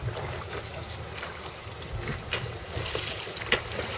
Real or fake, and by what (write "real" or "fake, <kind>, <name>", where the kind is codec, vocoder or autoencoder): real